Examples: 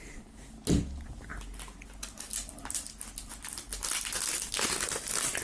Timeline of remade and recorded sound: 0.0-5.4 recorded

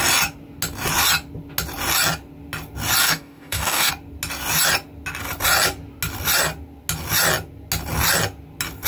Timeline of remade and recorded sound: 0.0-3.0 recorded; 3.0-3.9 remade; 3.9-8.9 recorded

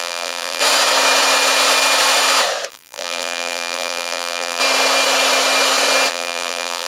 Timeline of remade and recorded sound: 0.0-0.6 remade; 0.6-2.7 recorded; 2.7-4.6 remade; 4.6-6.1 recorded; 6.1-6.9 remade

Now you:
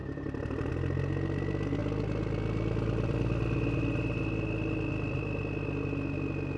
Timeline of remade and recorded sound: 0.0-0.7 remade; 0.7-1.8 recorded; 1.8-5.4 remade; 5.4-6.6 recorded